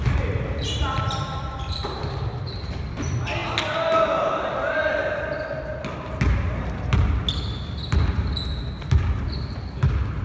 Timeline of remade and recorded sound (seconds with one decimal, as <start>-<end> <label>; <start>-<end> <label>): 0.0-10.2 recorded